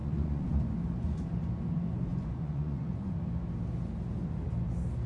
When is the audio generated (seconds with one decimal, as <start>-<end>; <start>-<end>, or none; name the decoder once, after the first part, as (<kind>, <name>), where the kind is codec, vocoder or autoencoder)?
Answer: 0.0-0.6 (vocoder, Vocos); 2.1-3.2